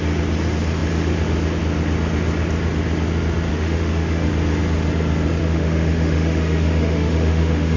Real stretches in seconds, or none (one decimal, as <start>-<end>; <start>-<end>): 0.0-3.5; 4.3-5.4